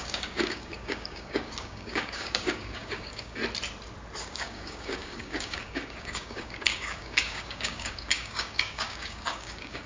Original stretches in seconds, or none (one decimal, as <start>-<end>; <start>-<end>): 3.4-4.2